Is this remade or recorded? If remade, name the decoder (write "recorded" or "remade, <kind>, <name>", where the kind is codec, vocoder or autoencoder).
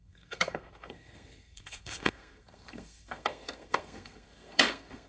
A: remade, codec, SNAC